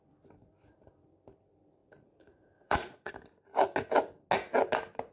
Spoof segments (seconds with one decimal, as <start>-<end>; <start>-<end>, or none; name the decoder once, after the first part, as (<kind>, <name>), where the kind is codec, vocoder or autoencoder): 1.8-3.1 (vocoder, Vocos)